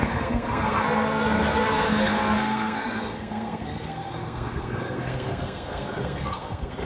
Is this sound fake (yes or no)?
yes